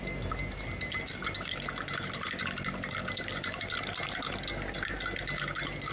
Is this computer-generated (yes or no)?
no